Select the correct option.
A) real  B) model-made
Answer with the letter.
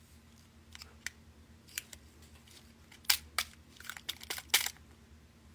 A